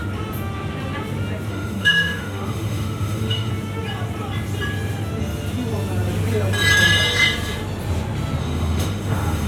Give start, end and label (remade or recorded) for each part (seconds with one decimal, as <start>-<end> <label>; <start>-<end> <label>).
0.0-1.5 recorded; 1.5-3.5 remade; 3.5-8.4 recorded; 8.4-9.5 remade